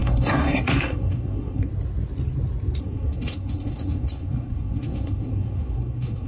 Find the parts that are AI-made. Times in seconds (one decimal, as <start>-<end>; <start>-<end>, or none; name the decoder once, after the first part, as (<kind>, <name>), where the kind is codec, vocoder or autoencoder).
0.0-1.7 (codec, SNAC); 2.8-6.3

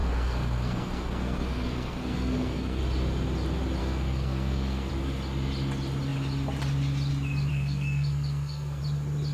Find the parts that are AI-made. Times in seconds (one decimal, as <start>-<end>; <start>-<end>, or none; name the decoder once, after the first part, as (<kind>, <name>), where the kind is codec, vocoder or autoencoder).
0.0-2.8 (codec, SNAC); 3.8-4.9; 7.5-8.8

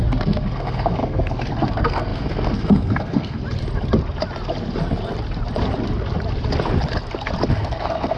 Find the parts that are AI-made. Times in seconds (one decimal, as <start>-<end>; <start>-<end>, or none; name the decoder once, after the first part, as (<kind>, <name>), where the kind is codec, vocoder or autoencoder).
0.0-3.4 (codec, SNAC); 7.5-8.2

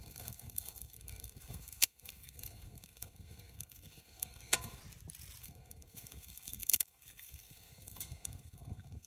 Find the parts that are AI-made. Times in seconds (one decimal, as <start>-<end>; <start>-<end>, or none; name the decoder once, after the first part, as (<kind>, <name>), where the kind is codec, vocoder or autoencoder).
0.0-4.8 (codec, SNAC); 5.4-9.1

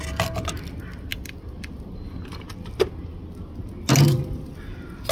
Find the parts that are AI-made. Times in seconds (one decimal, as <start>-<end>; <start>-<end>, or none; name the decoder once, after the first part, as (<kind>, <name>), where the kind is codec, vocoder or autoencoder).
none

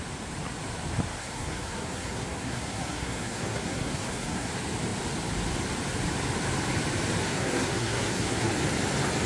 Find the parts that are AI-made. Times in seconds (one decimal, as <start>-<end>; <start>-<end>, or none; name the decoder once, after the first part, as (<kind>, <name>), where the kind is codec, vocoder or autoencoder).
1.2-4.5 (codec, SNAC); 7.2-8.5